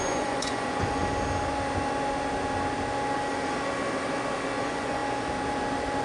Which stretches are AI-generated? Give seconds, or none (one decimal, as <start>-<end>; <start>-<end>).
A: 0.0-1.0; 4.6-5.0